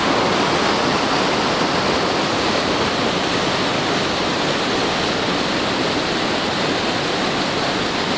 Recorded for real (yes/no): yes